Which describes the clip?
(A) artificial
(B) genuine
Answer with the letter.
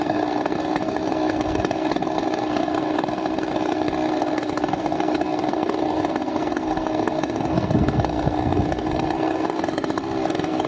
A